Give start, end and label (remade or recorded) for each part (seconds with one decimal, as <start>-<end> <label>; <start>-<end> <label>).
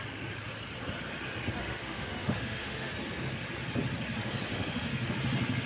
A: 0.0-1.6 recorded; 1.6-2.9 remade; 2.9-4.5 recorded; 4.5-5.1 remade; 5.1-5.7 recorded